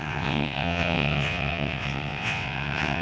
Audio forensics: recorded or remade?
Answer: remade